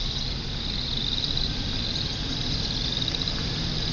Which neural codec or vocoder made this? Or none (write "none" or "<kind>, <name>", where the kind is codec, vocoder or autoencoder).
vocoder, BigVGAN v2